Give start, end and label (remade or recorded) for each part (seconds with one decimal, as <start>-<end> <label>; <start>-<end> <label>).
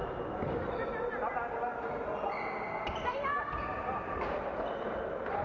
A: 0.0-5.4 recorded